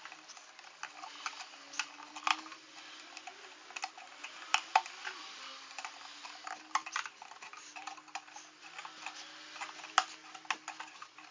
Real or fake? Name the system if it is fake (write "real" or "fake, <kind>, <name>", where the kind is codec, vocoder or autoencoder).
real